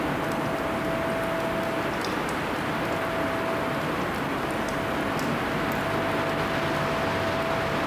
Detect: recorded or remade recorded